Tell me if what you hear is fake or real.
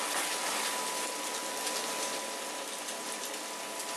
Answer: real